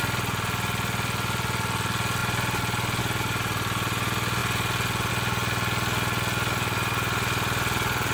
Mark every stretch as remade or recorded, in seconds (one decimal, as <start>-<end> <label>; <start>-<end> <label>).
0.0-8.1 recorded